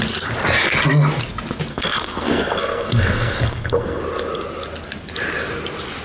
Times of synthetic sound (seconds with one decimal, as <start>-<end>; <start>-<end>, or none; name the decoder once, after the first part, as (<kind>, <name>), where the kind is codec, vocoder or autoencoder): 1.7-4.0 (codec, SNAC)